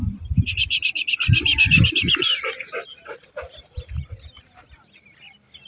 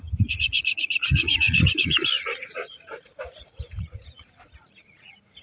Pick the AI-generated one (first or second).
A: second